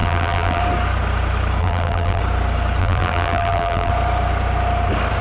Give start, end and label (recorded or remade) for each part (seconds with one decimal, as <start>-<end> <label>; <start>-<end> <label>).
0.0-0.6 remade; 0.6-1.6 recorded; 1.6-2.2 remade; 2.2-2.8 recorded; 2.8-3.9 remade; 3.9-5.2 recorded